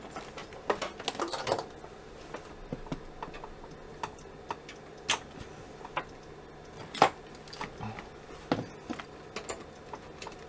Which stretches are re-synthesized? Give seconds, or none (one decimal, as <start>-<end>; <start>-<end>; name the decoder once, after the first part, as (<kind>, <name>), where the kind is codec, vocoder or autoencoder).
none